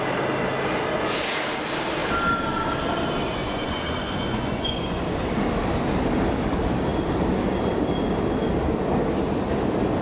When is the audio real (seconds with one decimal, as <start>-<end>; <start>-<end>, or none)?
0.0-3.4; 5.0-10.0